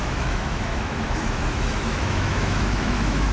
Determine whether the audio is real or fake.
fake